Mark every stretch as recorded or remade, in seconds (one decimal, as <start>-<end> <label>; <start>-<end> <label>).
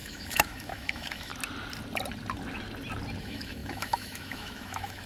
0.0-1.3 remade; 1.3-3.2 recorded; 3.2-5.1 remade